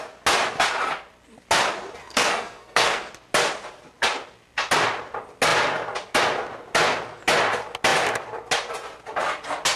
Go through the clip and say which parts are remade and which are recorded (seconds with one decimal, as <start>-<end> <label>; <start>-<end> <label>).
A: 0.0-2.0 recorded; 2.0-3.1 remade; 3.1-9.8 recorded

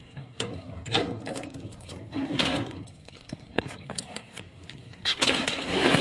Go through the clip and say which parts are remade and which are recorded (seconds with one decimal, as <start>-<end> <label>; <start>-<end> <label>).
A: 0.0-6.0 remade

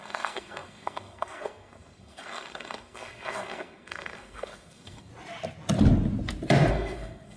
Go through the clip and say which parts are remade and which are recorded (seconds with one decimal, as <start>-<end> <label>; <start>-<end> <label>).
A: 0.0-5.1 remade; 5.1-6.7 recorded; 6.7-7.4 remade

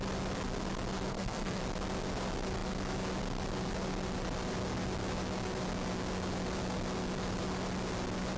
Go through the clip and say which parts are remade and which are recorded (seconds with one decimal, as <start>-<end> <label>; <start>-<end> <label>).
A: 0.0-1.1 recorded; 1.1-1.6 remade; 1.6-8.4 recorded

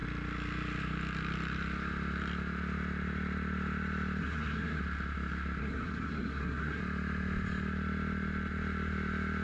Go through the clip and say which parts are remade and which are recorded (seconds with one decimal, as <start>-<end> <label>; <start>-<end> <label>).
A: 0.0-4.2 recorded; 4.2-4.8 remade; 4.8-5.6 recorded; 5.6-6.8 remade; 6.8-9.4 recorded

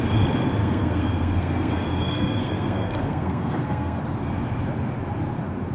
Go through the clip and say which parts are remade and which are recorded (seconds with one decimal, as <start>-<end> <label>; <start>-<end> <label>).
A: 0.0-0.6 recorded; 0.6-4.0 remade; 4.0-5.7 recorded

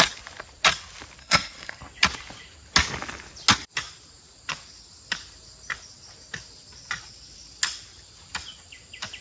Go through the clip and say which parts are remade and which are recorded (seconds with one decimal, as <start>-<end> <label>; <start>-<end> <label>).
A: 0.0-1.2 recorded; 1.2-1.8 remade; 1.8-9.2 recorded

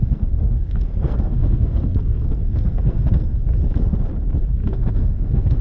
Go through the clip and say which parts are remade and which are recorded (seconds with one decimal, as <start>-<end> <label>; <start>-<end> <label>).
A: 0.0-3.4 remade; 3.4-4.6 recorded; 4.6-5.6 remade